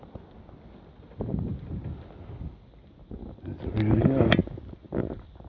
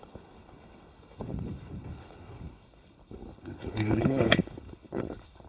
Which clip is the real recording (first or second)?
first